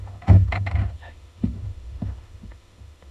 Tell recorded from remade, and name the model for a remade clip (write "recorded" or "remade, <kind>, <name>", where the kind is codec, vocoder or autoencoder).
remade, autoencoder, DAC-VAE